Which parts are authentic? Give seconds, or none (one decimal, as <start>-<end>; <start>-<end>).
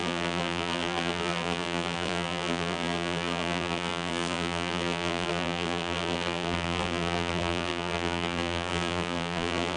none